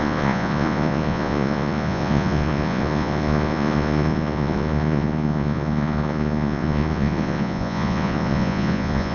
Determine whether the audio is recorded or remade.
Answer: remade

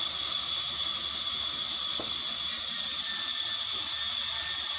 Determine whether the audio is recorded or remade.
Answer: recorded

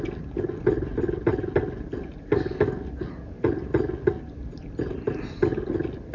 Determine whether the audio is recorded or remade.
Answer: recorded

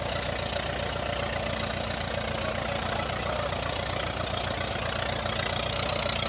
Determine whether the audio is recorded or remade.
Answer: recorded